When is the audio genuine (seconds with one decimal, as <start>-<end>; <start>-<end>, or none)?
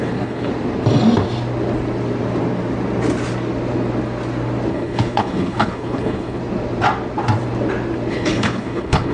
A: 0.5-4.7; 6.4-8.1